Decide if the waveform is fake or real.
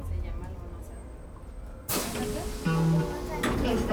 real